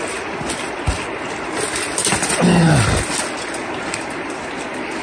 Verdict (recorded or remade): recorded